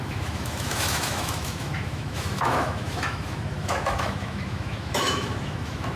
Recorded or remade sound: remade